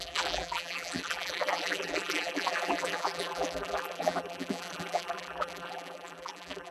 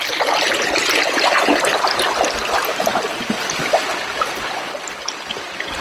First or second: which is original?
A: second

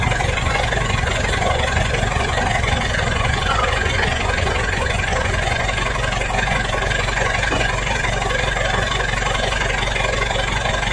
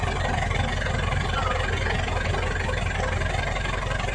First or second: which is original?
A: second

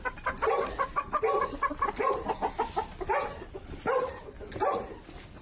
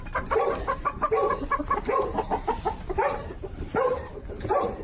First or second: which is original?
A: first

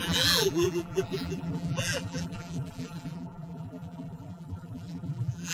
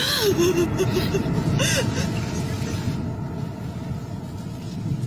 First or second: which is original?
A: second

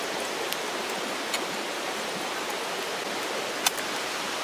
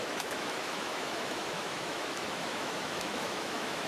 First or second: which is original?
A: first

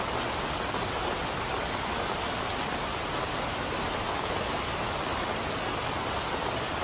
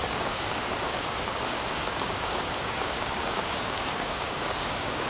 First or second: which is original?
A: first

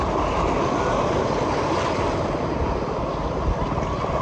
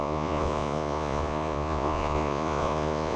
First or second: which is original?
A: first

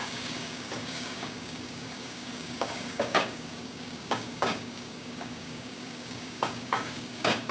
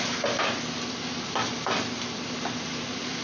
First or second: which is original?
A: second